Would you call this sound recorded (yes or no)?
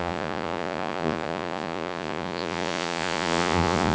no